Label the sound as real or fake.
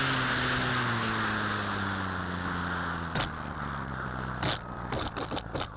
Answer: real